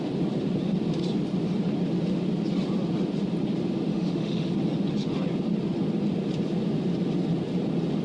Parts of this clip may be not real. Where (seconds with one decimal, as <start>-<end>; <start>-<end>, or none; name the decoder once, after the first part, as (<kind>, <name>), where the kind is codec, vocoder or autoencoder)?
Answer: 3.9-4.5 (autoencoder, DAC-VAE)

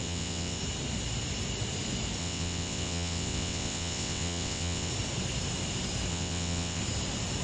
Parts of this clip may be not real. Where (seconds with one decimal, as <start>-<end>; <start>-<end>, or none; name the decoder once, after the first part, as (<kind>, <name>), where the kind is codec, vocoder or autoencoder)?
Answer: 0.0-0.6 (vocoder, WaveNeXt); 2.2-4.9; 6.1-6.8

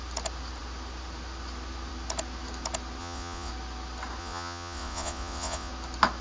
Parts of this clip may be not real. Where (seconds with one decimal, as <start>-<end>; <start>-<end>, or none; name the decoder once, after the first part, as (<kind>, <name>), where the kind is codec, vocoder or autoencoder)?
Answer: 3.0-3.5 (vocoder, Vocos); 4.2-5.7